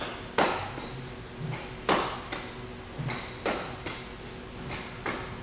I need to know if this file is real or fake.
real